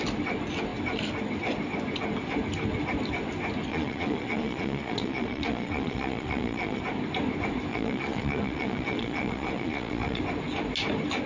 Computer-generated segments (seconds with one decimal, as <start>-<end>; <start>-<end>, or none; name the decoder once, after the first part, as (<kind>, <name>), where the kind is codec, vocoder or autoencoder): 3.7-6.8 (vocoder, Vocos); 7.7-10.2